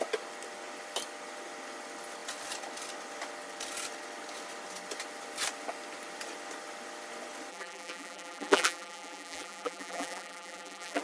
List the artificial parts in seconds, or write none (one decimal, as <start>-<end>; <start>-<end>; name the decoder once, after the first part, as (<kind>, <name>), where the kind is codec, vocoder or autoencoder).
7.5-11.0 (vocoder, BigVGAN v2)